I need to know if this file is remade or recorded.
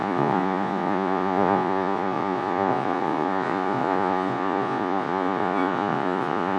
remade